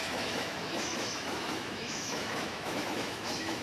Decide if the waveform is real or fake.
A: fake